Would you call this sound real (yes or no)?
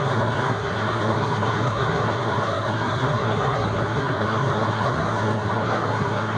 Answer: no